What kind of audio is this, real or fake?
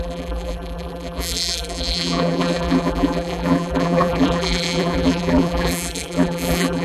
fake